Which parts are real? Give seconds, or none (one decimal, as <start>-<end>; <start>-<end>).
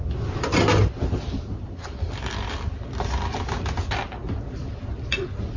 0.0-5.6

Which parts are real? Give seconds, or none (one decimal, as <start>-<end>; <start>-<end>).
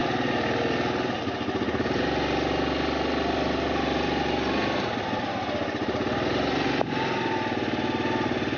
0.0-8.6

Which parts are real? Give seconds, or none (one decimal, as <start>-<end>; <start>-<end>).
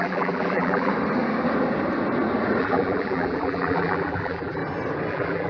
0.9-2.6; 4.6-5.1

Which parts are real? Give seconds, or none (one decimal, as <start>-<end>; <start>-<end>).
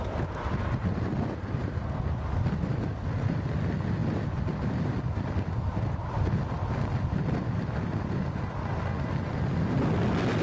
0.0-10.4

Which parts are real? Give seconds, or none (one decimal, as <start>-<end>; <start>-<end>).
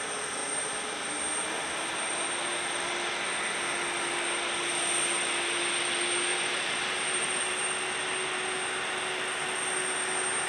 0.0-6.3; 7.4-10.5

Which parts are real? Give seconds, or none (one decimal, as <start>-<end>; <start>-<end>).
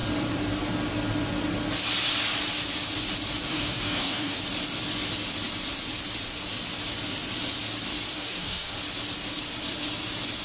0.0-3.5; 4.4-8.1; 8.7-10.4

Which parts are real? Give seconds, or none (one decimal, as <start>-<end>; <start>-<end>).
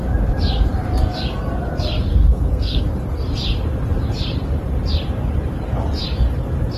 0.0-2.2; 2.8-6.8